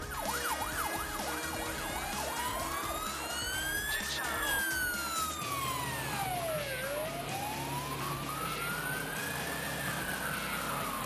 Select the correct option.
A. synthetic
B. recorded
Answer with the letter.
B